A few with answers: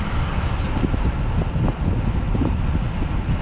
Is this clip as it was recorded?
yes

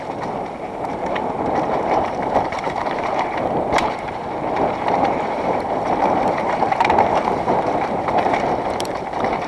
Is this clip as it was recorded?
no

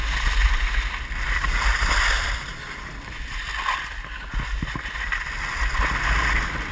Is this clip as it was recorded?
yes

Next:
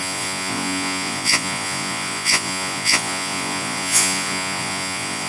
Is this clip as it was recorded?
no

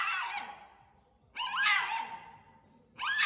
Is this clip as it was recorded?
no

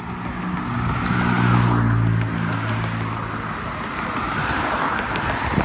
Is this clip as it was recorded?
yes